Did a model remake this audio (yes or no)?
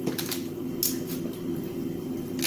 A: no